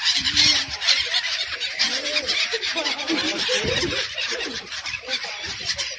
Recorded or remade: remade